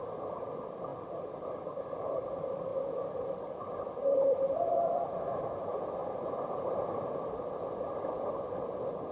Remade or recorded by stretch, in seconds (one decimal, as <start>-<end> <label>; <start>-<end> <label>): 0.0-0.9 remade; 0.9-1.5 recorded; 1.5-2.7 remade; 2.7-4.0 recorded; 4.0-6.0 remade; 6.0-7.2 recorded; 7.2-9.1 remade